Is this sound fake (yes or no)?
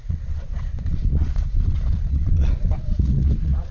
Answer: yes